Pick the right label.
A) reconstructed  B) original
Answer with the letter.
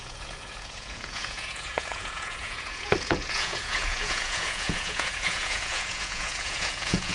A